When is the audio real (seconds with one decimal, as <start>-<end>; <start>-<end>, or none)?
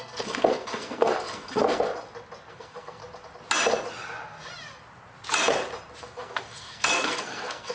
1.9-2.5; 3.0-6.0